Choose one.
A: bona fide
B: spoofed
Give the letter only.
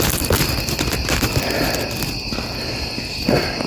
A